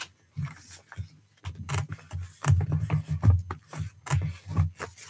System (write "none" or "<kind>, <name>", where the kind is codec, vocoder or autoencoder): none